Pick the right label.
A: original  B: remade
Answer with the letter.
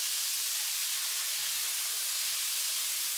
A